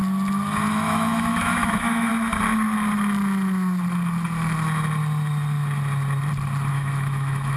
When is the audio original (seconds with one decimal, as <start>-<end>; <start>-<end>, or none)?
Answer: 0.0-0.7; 2.1-6.7